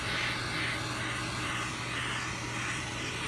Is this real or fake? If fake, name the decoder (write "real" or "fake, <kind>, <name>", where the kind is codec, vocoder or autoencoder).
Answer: real